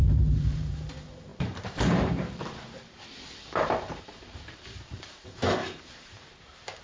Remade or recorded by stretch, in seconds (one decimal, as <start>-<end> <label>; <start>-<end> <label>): 0.0-6.8 remade